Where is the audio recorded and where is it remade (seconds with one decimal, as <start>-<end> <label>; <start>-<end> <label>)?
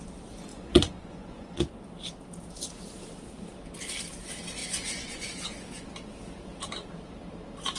0.0-0.5 recorded; 0.5-1.7 remade; 1.7-4.6 recorded; 4.6-5.9 remade; 5.9-7.8 recorded